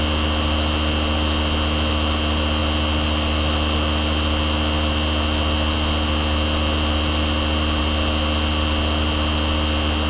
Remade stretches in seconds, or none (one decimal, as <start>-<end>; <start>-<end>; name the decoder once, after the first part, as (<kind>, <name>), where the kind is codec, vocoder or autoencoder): none